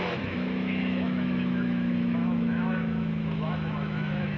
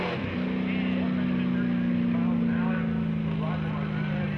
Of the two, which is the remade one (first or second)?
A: first